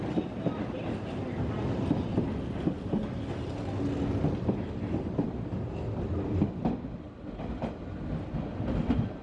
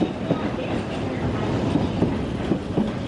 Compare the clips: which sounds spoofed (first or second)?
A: second